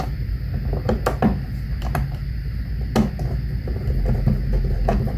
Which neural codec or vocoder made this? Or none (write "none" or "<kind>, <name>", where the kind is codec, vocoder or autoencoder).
none